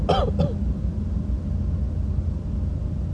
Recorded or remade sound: recorded